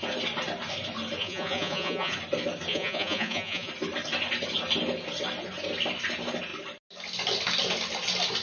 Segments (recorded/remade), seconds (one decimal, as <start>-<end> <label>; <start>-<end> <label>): 0.0-1.2 recorded; 1.2-2.1 remade; 2.1-2.7 recorded; 2.7-3.7 remade; 3.7-8.4 recorded